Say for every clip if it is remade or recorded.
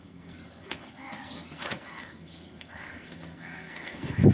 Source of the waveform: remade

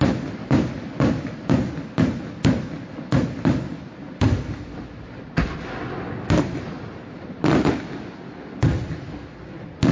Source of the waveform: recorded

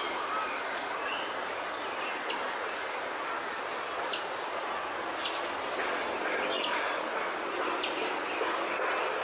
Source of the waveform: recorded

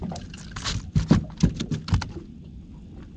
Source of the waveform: recorded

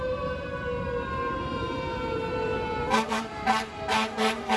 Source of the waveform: remade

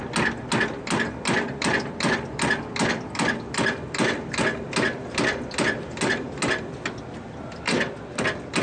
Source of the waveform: recorded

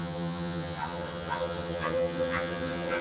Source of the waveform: remade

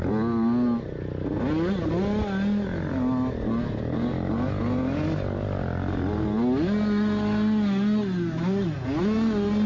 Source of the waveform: recorded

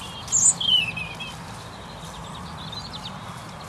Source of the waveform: recorded